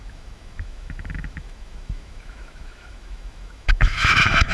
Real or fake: fake